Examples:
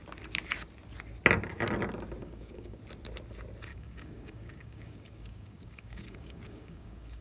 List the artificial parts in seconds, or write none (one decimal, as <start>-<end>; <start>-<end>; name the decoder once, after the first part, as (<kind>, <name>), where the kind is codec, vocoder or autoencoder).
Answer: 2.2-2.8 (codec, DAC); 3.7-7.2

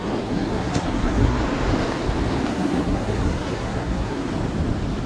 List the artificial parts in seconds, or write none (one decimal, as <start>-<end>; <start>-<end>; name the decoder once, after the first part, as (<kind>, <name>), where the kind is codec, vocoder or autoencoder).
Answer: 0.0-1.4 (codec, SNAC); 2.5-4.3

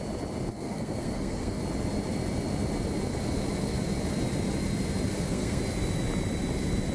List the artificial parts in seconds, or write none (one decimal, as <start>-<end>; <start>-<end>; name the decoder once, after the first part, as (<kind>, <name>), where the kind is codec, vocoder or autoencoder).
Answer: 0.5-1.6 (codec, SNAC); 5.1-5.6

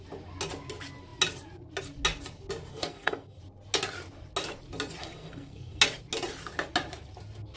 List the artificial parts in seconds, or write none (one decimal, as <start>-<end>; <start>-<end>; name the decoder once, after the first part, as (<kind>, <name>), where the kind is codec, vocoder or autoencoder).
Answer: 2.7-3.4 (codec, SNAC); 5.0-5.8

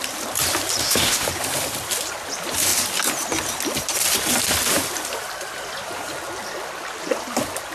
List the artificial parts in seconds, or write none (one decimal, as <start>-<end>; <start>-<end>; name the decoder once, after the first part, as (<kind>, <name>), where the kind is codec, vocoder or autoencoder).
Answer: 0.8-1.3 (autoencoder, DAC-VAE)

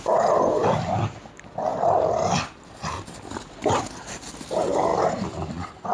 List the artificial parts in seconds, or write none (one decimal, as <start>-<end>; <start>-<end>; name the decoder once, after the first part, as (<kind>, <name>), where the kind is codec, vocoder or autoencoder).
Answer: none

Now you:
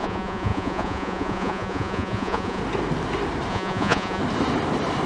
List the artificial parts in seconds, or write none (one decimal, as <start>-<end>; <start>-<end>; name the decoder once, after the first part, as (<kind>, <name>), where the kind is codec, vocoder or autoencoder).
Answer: 0.0-2.6 (vocoder, Vocos); 3.5-4.2